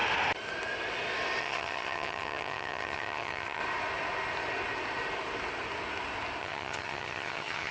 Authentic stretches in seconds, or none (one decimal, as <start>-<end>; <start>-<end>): 0.0-1.4; 3.6-6.4